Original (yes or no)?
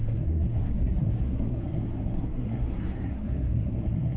no